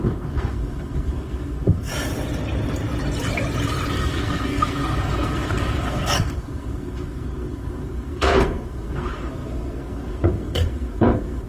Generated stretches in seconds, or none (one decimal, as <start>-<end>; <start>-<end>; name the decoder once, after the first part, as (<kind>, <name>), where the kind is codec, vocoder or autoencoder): 0.0-1.9 (codec, SNAC); 3.9-11.5